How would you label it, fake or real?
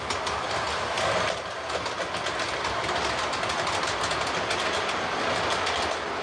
real